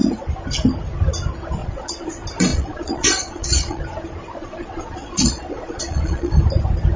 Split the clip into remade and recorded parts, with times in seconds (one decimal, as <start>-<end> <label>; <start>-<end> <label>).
0.0-1.6 recorded; 1.6-2.1 remade; 2.1-2.5 recorded; 2.5-3.8 remade; 3.8-4.4 recorded; 4.4-6.3 remade; 6.3-7.0 recorded